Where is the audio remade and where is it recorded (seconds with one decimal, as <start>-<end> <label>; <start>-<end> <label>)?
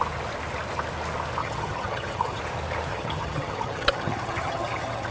0.0-1.4 recorded; 1.4-2.4 remade; 2.4-2.9 recorded; 2.9-5.1 remade